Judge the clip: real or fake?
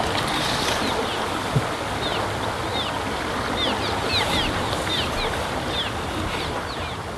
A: real